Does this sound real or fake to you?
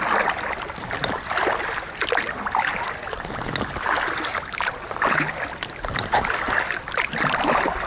real